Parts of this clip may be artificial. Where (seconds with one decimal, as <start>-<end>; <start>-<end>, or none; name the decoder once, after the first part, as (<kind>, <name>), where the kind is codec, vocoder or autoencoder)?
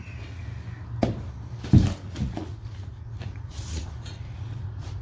2.0-5.0 (vocoder, Vocos)